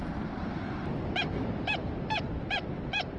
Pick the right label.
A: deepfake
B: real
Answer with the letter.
A